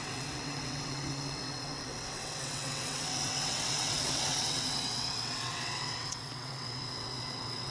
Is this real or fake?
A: fake